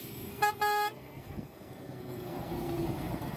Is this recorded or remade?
remade